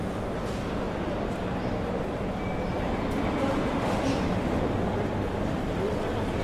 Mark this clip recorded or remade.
recorded